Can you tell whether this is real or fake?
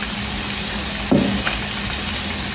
real